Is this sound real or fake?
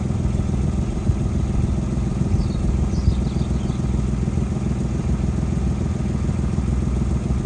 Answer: real